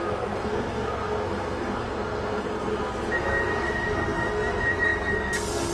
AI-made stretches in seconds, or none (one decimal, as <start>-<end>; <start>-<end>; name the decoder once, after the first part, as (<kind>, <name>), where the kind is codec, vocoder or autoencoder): 0.0-5.7 (codec, SNAC)